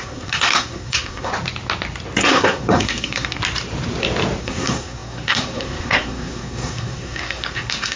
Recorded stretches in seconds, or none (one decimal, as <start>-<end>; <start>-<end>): 1.3-2.3; 3.4-4.4